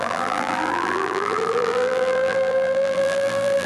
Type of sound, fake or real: fake